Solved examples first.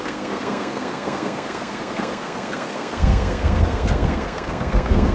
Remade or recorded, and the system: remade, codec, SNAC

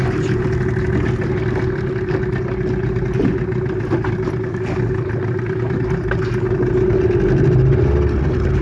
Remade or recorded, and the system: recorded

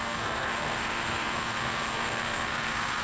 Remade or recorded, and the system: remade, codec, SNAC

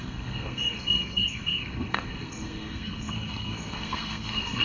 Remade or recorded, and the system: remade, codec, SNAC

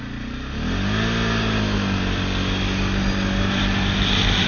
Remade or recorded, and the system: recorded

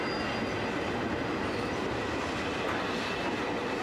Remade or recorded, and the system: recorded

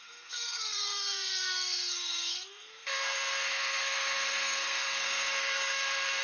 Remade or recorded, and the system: remade, codec, SNAC